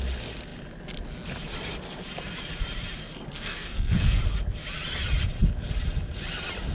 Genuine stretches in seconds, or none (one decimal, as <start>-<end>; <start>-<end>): 0.0-3.0; 4.2-6.7